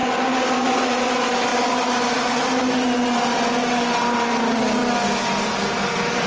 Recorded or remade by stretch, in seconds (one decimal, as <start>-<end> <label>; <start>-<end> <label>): 0.0-6.3 recorded